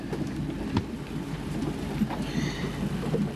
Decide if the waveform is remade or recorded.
recorded